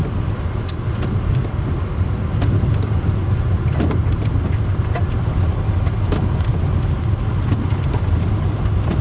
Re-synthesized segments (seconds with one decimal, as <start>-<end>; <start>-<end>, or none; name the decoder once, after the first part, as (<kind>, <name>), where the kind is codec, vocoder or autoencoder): none